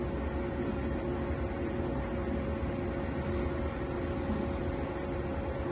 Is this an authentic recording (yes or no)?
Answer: yes